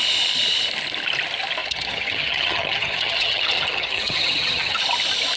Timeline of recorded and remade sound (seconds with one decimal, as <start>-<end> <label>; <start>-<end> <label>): 0.0-1.6 recorded; 1.6-4.8 remade; 4.8-5.4 recorded